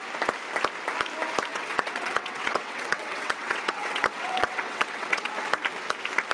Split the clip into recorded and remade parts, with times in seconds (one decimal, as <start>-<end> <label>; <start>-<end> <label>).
0.0-1.5 recorded; 1.5-5.3 remade; 5.3-6.3 recorded